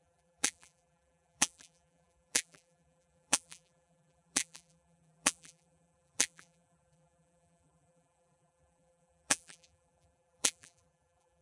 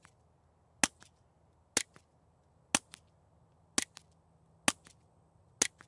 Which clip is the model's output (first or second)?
first